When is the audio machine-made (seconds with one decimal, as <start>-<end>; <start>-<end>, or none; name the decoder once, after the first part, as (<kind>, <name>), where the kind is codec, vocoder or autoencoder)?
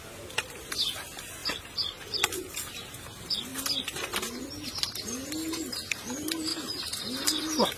none